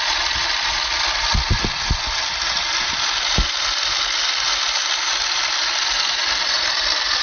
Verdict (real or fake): real